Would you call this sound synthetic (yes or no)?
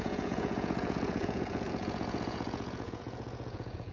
yes